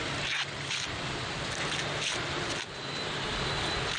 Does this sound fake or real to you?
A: real